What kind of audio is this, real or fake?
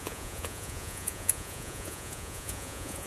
fake